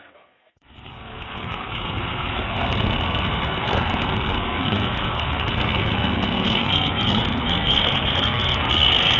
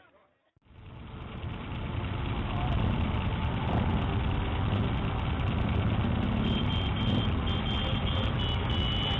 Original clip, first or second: second